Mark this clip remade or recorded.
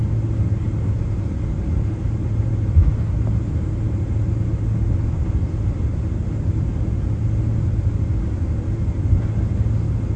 recorded